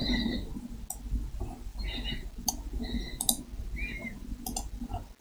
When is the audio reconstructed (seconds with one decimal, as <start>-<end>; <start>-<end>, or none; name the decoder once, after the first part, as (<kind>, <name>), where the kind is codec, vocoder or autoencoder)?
none